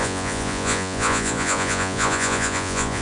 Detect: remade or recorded remade